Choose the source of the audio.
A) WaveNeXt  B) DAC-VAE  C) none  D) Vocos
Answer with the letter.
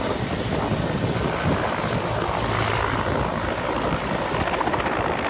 C